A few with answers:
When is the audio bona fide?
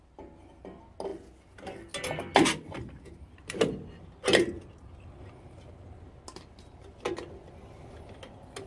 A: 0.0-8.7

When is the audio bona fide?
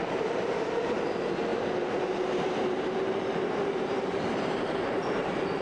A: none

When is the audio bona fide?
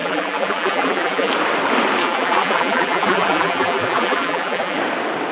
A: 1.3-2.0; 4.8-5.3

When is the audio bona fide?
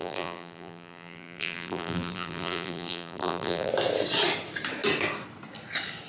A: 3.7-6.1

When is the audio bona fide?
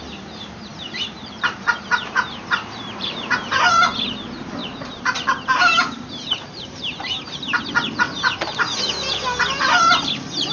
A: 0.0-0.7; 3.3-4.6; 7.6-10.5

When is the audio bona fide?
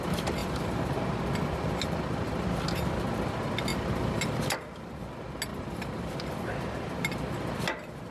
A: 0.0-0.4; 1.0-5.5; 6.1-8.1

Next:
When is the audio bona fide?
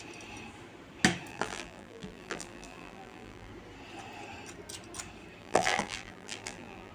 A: 0.0-1.3; 3.5-5.4